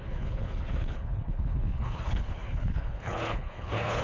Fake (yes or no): yes